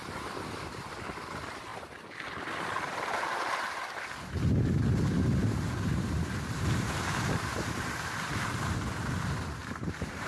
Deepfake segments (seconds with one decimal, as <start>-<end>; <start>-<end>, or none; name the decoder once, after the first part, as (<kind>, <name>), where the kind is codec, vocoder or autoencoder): 5.4-8.5 (vocoder, BigVGAN v2); 9.6-10.3